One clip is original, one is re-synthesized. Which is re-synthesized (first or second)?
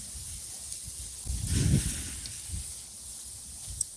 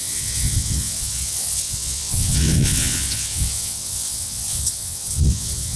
second